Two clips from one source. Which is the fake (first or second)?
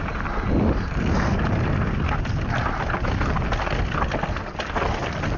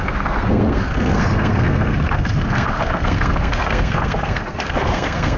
second